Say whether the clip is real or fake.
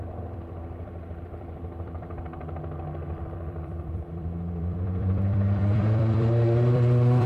fake